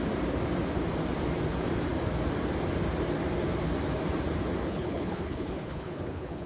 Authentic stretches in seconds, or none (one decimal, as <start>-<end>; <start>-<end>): 0.0-4.6